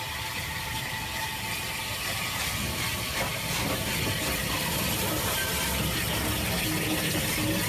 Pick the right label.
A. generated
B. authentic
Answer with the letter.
B